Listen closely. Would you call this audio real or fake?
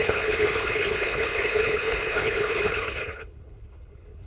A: fake